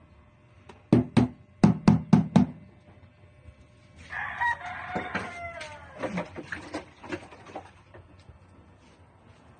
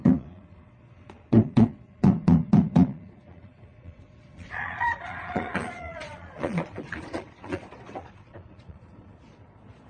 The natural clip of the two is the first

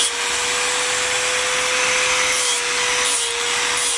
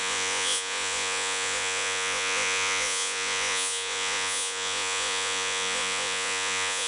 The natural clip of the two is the first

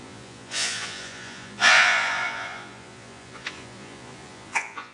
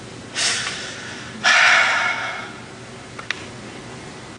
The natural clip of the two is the second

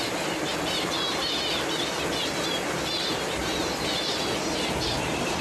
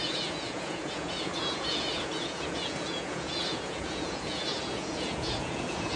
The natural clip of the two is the first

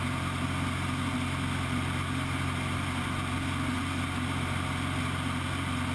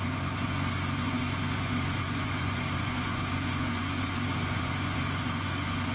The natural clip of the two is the first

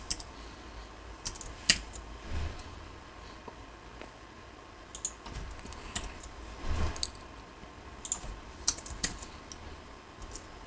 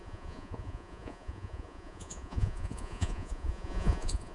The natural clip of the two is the first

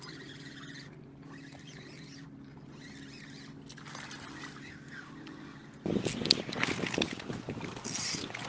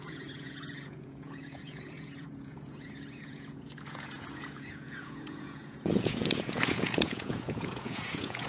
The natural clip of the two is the first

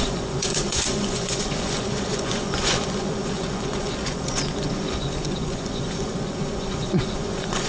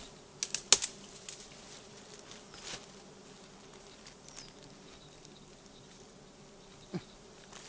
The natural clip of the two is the second